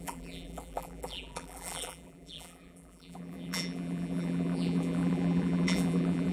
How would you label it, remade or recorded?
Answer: remade